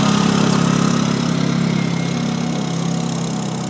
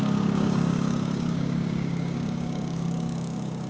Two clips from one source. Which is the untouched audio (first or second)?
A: first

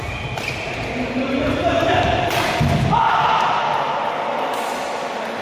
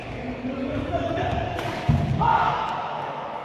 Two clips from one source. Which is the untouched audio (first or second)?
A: first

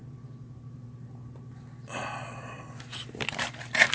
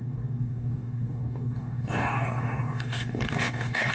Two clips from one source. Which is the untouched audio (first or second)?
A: first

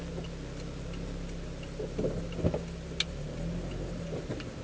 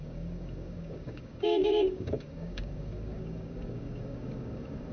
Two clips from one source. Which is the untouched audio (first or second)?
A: first